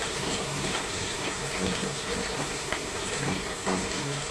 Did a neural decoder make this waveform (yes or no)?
yes